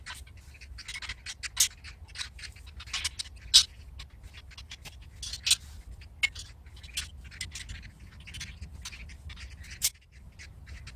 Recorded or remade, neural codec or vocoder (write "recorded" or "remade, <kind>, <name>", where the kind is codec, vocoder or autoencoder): recorded